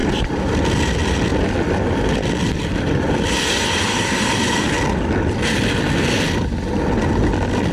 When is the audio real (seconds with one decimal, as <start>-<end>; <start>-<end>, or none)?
0.6-7.7